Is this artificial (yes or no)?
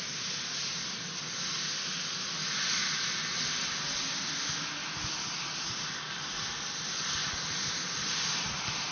no